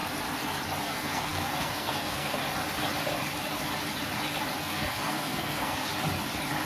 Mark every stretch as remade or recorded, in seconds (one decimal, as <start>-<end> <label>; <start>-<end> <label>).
0.0-0.8 recorded; 0.8-2.4 remade; 2.4-4.6 recorded; 4.6-5.9 remade; 5.9-6.7 recorded